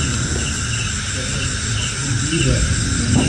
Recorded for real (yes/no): yes